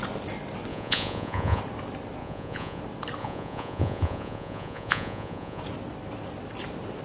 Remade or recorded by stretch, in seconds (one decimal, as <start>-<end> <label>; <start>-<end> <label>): 0.0-0.7 recorded; 0.7-1.6 remade; 1.6-2.2 recorded; 2.2-2.8 remade; 2.8-3.2 recorded; 3.2-5.6 remade; 5.6-7.0 recorded